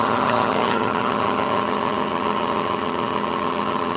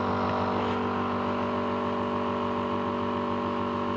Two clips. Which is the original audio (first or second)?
second